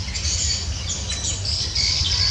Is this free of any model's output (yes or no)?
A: yes